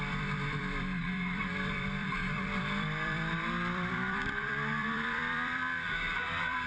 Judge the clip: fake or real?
fake